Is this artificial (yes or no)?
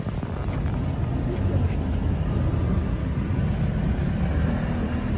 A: no